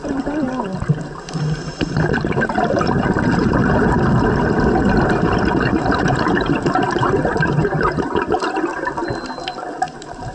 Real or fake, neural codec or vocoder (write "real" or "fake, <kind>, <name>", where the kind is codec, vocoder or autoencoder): fake, vocoder, BigVGAN v2